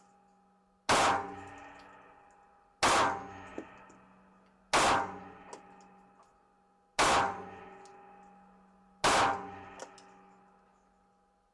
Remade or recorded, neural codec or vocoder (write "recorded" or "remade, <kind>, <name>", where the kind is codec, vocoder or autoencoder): recorded